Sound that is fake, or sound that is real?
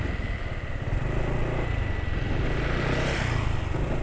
real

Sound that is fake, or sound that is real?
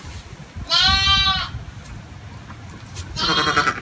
real